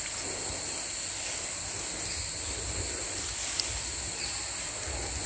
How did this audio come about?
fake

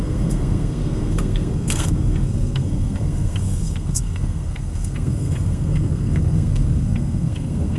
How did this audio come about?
fake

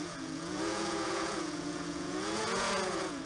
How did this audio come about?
fake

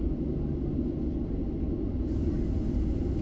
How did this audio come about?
real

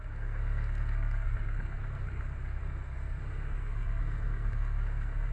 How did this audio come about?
fake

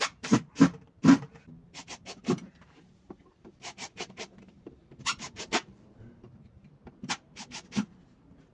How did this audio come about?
fake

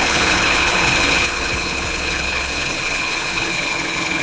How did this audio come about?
fake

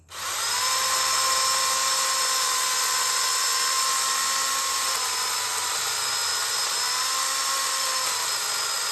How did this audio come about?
real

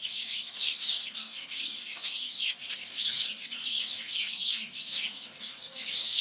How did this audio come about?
fake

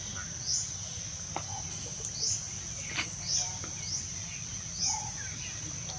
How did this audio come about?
real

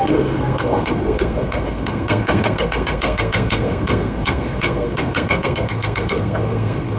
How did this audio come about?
fake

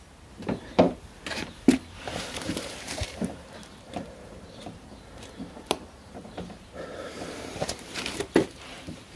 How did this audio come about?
fake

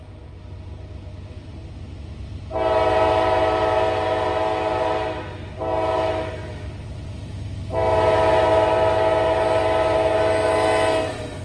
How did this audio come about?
real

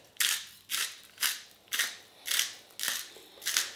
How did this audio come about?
real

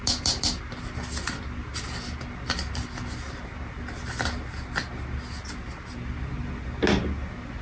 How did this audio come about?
real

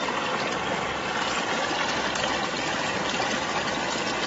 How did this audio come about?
real